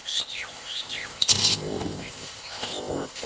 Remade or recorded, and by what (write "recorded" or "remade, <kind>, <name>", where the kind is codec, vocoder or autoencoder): remade, codec, ZipCodec